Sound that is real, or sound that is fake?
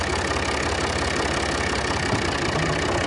real